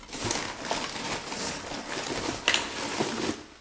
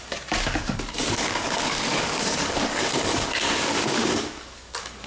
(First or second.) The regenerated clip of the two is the second